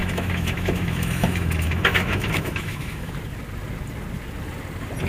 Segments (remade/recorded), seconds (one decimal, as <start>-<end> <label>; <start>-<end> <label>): 0.0-3.1 remade; 3.1-5.1 recorded